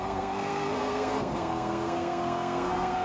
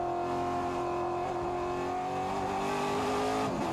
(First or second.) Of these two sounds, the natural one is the second